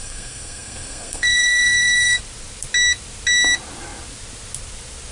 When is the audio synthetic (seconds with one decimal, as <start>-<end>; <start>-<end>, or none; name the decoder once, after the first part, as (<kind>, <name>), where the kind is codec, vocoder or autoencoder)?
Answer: 0.0-2.2 (codec, SNAC)